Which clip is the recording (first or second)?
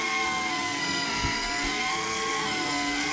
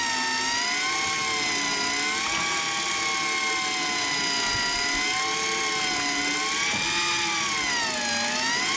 second